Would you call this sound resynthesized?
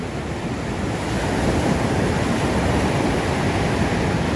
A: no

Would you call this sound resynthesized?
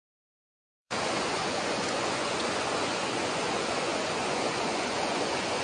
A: yes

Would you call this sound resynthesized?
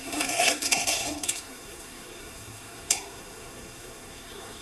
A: yes